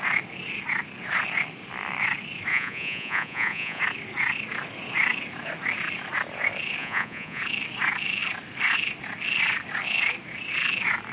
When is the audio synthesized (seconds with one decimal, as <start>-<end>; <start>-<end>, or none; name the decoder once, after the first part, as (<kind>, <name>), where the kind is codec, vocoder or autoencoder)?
2.5-3.8 (vocoder, Vocos); 6.8-7.4